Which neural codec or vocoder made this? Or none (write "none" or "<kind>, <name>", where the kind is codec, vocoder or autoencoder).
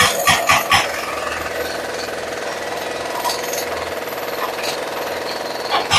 none